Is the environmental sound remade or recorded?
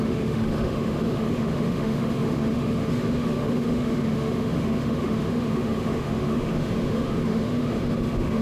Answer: remade